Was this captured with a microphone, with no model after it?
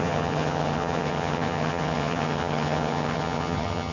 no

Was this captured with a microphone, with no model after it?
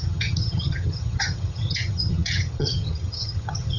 no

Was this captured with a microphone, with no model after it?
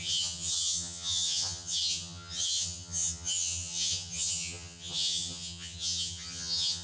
no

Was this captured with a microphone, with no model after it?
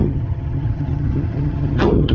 no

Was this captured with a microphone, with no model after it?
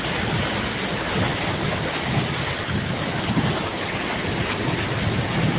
yes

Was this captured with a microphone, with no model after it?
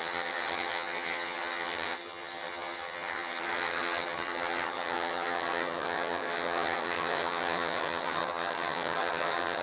no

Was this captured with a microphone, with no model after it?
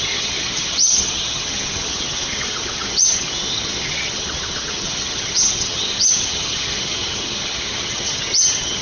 no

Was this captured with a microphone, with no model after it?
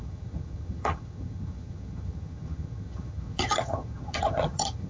no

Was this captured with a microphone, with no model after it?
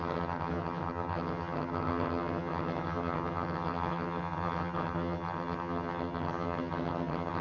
no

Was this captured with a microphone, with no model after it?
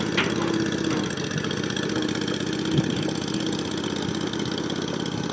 yes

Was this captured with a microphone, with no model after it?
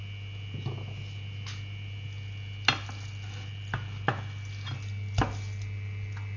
yes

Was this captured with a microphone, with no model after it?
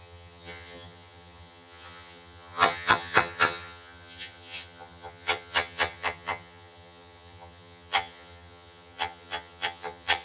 no